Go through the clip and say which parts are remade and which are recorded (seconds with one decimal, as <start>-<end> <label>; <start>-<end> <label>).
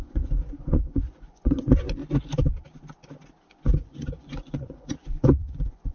0.0-2.0 remade; 2.0-3.6 recorded; 3.6-5.9 remade